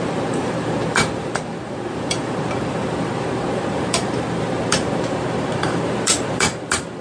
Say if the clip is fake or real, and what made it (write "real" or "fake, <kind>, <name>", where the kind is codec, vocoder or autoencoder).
fake, vocoder, BigVGAN v2